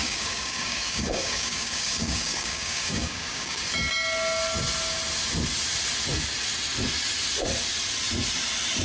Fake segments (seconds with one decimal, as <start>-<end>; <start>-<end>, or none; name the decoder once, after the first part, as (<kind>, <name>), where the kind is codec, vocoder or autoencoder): 0.0-3.6 (codec, DAC)